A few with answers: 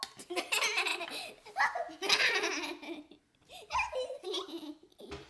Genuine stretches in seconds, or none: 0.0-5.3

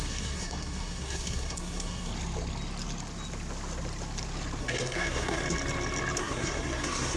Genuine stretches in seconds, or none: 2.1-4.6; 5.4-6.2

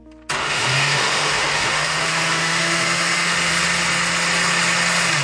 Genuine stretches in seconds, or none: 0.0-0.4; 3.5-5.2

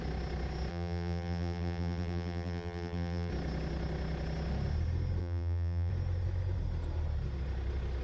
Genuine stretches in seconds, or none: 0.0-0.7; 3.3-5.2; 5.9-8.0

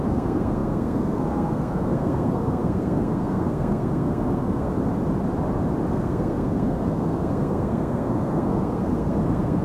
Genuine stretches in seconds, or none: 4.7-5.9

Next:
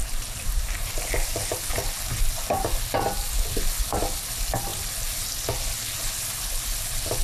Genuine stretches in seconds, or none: 1.5-7.2